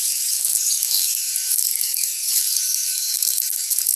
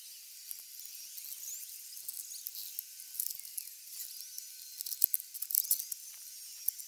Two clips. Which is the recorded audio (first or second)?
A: second